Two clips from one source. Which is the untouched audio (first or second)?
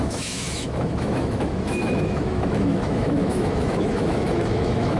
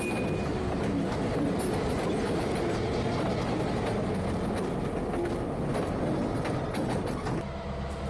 second